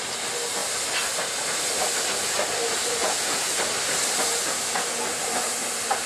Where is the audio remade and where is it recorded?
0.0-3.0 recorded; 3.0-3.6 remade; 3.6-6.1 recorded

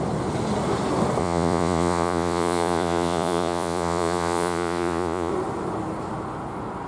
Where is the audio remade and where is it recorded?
0.0-1.2 recorded; 1.2-5.3 remade; 5.3-6.9 recorded